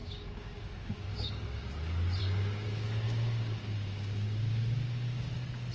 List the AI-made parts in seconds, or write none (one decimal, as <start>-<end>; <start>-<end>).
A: 0.0-1.7; 2.2-5.7

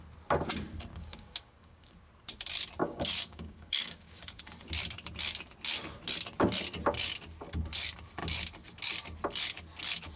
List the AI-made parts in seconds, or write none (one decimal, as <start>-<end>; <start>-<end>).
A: 0.9-2.0; 2.8-4.4

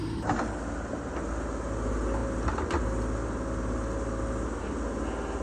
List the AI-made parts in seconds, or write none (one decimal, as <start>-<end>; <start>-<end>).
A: 0.0-0.6

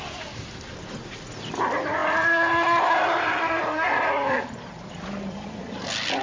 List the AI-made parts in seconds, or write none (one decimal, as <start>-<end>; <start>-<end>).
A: none